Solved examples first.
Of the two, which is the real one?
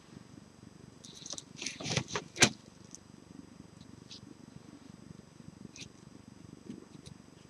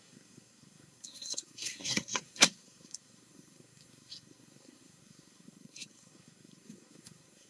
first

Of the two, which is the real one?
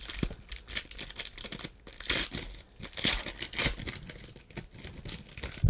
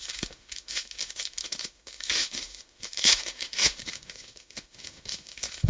first